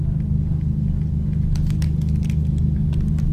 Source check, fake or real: real